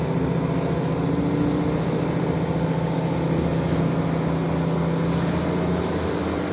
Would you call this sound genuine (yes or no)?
yes